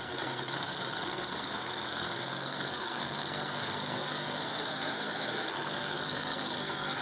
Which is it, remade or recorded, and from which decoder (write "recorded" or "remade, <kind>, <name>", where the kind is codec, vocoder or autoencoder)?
remade, codec, SNAC